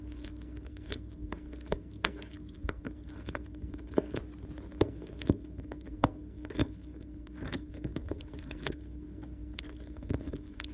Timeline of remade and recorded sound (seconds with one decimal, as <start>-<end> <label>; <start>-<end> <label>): 0.0-4.2 remade; 4.2-4.7 recorded; 4.7-10.7 remade

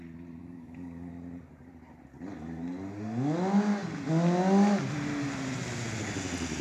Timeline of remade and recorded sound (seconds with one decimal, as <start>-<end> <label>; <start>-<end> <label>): 0.0-0.4 recorded; 0.4-1.1 remade; 1.1-6.6 recorded

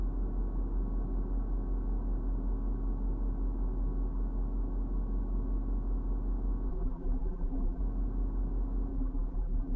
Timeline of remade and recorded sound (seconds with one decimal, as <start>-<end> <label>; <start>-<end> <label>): 0.0-6.7 recorded; 6.7-7.8 remade; 7.8-8.9 recorded; 8.9-9.8 remade

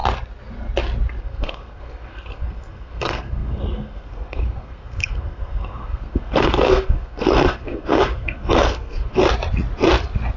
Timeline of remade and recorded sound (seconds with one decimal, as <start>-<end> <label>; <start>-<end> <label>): 0.0-1.2 recorded; 1.2-9.2 remade; 9.2-10.4 recorded

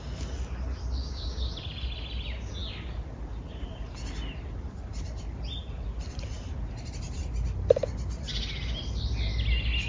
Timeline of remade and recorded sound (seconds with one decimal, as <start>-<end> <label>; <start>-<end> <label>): 0.0-1.0 recorded; 1.0-1.5 remade; 1.5-9.9 recorded

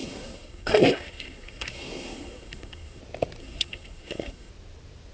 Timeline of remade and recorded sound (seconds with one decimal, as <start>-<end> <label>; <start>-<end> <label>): 0.0-3.0 remade; 3.0-3.4 recorded; 3.4-4.5 remade; 4.5-5.1 recorded